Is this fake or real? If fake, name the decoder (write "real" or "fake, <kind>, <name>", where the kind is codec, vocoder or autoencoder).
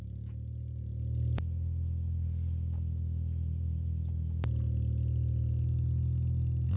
real